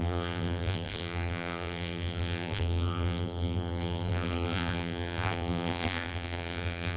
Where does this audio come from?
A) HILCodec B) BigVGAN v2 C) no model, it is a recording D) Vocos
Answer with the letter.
B